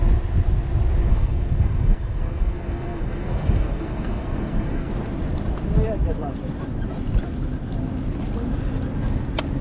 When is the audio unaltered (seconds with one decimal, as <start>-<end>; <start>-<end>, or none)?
0.0-1.1; 4.9-9.6